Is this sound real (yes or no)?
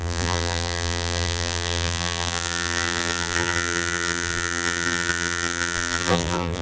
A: no